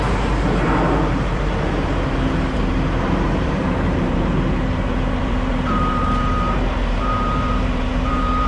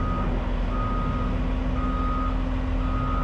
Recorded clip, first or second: second